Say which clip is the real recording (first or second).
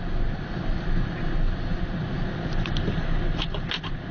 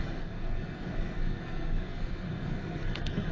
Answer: first